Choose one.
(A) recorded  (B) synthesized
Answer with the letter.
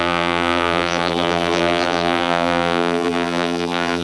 B